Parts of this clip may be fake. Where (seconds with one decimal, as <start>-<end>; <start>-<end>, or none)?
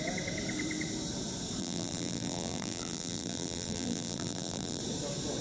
1.6-4.8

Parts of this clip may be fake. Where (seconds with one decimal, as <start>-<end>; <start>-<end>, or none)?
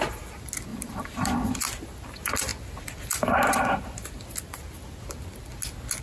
0.7-1.5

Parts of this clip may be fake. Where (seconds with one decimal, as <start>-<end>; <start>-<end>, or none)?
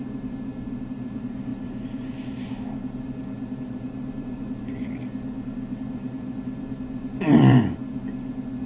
0.0-8.7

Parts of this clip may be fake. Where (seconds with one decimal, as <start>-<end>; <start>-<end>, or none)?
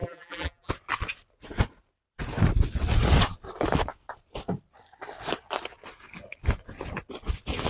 0.0-0.7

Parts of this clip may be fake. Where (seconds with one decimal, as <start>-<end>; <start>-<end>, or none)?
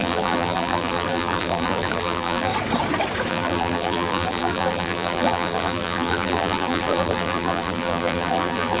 0.0-2.5; 3.3-8.8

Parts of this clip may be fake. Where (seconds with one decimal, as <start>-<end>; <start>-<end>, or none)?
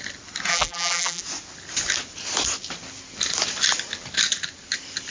0.5-1.2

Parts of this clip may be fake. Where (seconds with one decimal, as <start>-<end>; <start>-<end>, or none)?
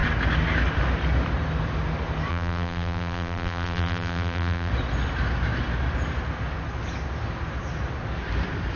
2.3-4.7